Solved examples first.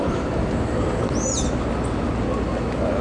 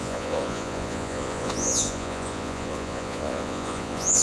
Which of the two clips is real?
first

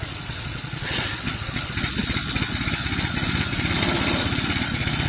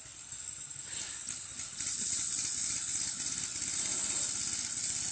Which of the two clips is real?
second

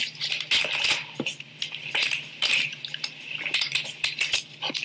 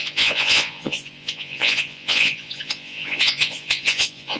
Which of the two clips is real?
first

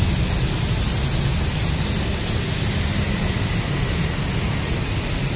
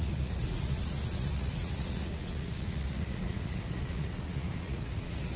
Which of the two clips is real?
first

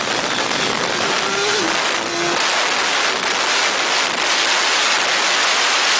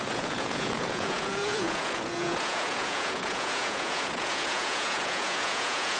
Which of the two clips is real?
first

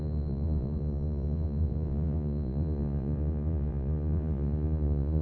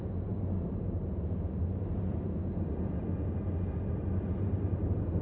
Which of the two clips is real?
second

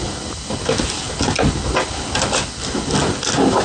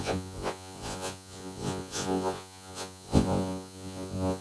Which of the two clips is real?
first